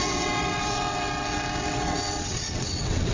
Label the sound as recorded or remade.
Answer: remade